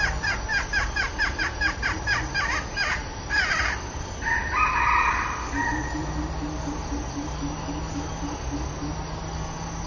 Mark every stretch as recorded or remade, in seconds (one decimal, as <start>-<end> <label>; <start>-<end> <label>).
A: 0.0-0.8 recorded; 0.8-4.0 remade; 4.0-9.9 recorded